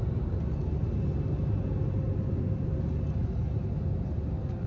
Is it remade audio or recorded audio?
recorded